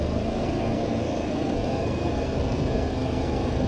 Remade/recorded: remade